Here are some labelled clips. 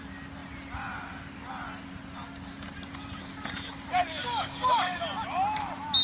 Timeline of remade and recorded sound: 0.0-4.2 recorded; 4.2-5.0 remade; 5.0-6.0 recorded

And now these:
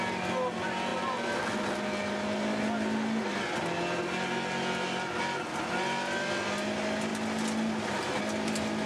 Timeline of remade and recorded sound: 0.0-8.9 recorded